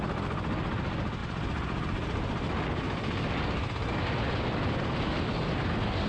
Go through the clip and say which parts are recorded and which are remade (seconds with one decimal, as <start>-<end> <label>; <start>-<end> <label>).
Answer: 0.0-6.1 recorded